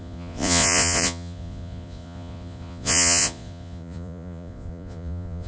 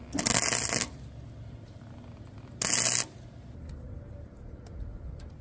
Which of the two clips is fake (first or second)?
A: first